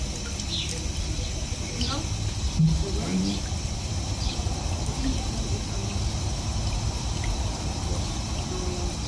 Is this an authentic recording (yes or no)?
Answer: yes